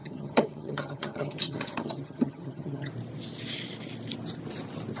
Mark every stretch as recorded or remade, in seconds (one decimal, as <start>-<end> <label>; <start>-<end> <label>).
0.0-2.9 remade; 2.9-5.0 recorded

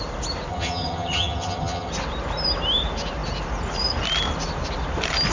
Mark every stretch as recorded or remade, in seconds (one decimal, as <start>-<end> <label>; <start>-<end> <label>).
0.0-0.5 recorded; 0.5-1.9 remade; 1.9-5.3 recorded